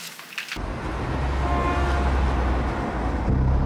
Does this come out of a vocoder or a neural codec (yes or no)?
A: no